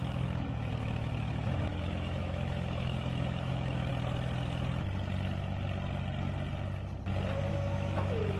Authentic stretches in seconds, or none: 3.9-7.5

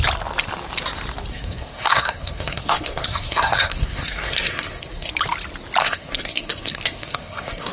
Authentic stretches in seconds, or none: 0.0-1.3; 5.1-5.8

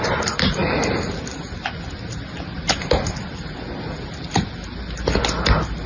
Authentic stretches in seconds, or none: 0.0-5.9

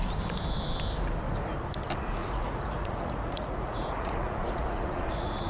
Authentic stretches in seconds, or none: 0.0-2.2

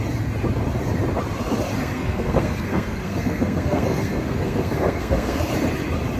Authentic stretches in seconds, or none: 0.0-1.8; 5.5-6.2